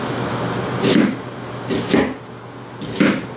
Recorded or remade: recorded